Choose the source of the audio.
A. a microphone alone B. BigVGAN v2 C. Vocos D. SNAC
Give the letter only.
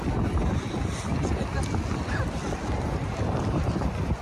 A